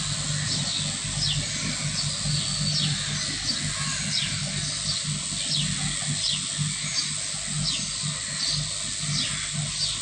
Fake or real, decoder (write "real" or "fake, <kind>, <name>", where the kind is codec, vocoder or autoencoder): real